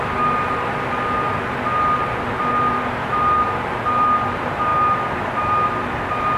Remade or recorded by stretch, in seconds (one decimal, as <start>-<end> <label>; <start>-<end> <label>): 0.0-6.4 recorded